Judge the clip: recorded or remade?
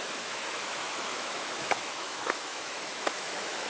remade